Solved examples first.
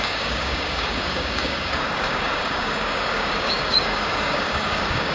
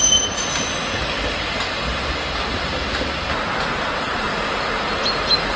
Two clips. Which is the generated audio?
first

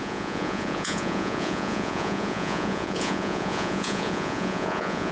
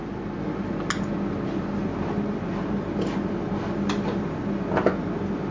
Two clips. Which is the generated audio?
first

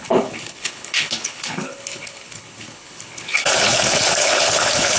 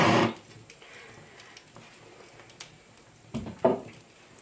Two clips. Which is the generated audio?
first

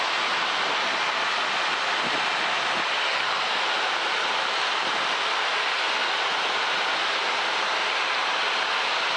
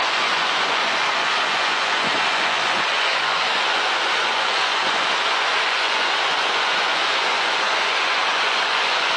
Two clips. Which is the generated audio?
second